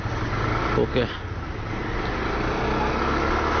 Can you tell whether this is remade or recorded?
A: recorded